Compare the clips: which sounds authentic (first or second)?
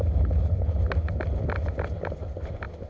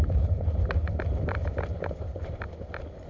first